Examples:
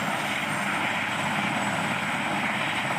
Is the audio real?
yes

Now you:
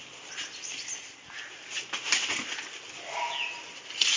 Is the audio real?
yes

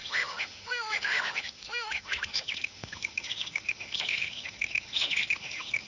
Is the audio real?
no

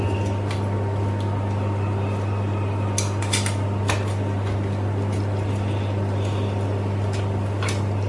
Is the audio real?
yes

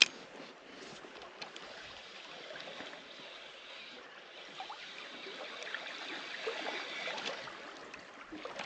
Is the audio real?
yes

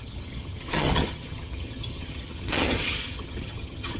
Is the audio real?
no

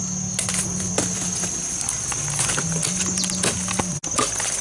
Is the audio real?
yes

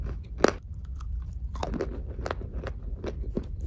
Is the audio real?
yes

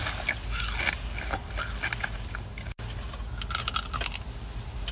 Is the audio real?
yes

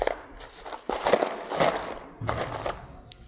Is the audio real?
yes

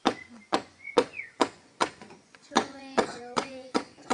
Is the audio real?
no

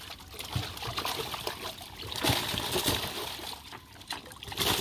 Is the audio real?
yes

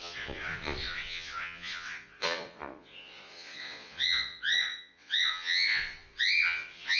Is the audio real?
no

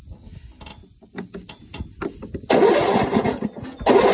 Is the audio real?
yes